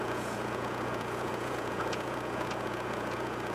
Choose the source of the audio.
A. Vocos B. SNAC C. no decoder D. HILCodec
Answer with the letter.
A